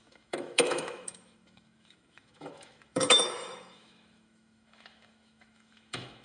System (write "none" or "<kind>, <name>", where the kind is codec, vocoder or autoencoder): autoencoder, DAC-VAE